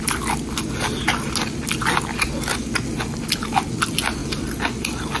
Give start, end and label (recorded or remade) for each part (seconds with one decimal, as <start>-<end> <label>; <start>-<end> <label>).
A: 0.0-5.2 recorded